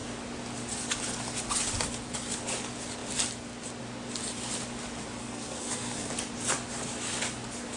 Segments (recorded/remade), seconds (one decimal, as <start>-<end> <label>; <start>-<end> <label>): 0.0-5.2 recorded; 5.2-6.1 remade; 6.1-7.8 recorded